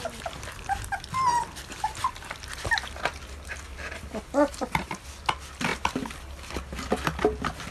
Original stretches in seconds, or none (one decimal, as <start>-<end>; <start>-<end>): 0.0-1.3; 2.2-3.7; 4.9-5.7; 6.2-7.7